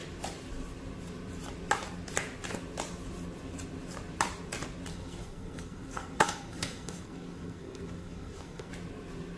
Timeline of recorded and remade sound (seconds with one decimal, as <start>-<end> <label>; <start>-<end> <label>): 0.0-4.9 recorded; 4.9-8.7 remade; 8.7-9.4 recorded